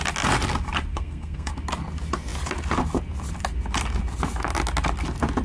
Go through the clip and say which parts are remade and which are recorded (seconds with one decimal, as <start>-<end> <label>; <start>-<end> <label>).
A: 0.0-0.9 recorded; 0.9-1.5 remade; 1.5-5.4 recorded